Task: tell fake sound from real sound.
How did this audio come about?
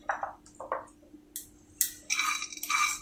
real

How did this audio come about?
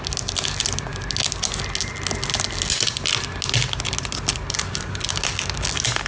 real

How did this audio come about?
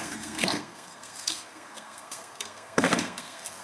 fake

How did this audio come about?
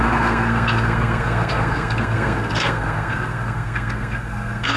fake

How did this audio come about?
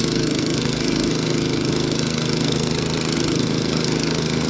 fake